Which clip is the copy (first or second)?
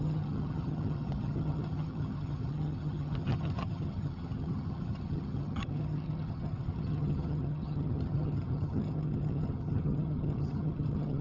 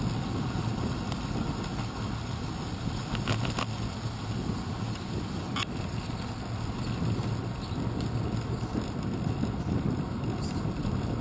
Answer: first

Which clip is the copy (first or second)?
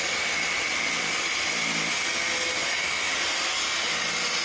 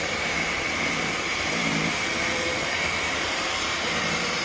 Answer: second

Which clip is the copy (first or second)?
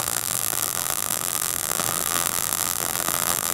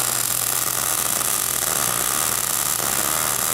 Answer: first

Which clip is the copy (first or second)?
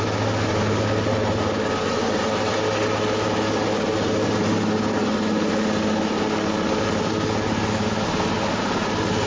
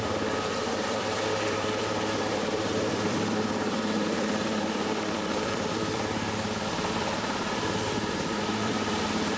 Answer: second